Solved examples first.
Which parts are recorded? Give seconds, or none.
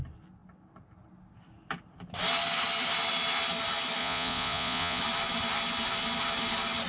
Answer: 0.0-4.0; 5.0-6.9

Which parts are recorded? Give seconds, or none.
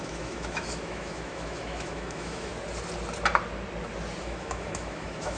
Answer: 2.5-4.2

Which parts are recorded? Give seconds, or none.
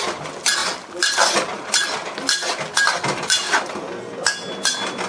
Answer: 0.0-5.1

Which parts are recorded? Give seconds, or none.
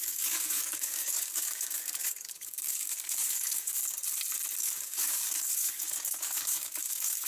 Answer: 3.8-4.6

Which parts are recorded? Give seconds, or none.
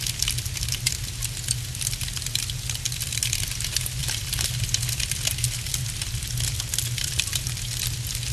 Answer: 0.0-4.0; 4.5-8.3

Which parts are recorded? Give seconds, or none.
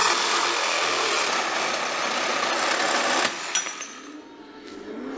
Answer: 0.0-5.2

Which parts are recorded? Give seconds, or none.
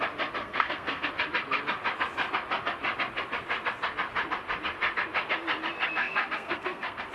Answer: 0.0-0.4; 1.1-6.0